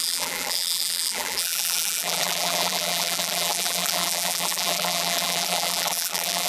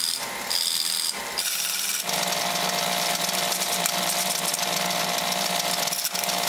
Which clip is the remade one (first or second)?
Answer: first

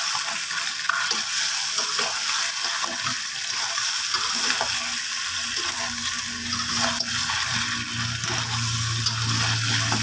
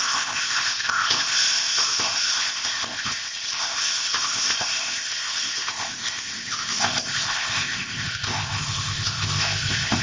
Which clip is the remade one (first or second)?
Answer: second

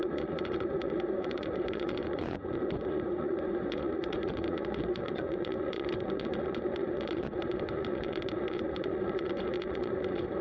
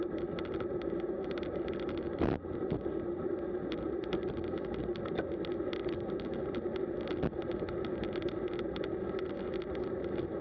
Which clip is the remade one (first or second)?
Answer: first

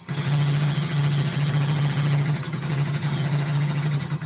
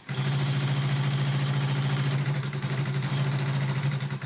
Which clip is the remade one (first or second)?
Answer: first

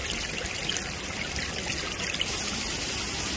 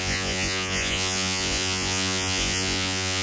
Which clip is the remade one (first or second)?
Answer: second